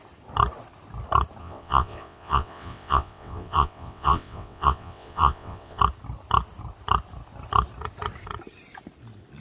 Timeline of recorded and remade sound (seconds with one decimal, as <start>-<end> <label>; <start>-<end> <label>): 0.0-1.4 recorded; 1.4-5.8 remade; 5.8-9.4 recorded

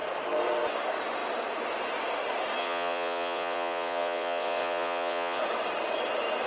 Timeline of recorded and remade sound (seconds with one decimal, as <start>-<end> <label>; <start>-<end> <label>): 0.0-2.6 recorded; 2.6-5.4 remade; 5.4-6.5 recorded